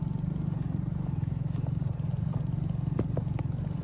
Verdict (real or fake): real